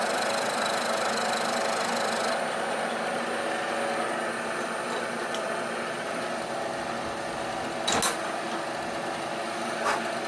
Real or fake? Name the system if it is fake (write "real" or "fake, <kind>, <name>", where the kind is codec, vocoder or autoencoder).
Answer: real